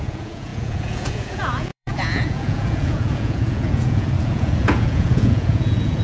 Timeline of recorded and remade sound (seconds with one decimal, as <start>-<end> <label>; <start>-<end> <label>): 0.0-6.0 remade